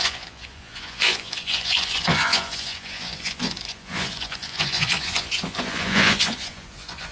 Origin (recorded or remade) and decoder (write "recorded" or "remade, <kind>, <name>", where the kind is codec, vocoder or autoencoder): remade, vocoder, Vocos